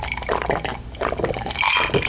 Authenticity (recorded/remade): recorded